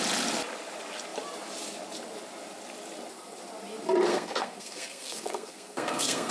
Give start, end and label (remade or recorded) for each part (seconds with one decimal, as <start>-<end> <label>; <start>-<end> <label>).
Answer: 0.0-4.1 recorded; 4.1-6.3 remade